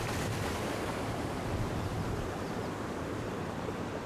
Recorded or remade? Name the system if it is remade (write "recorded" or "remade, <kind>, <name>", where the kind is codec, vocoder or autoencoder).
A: remade, vocoder, BigVGAN v2